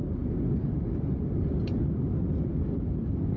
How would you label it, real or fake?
real